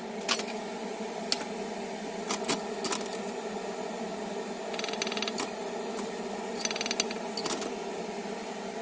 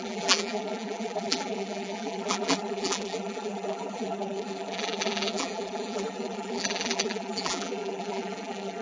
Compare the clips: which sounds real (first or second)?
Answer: first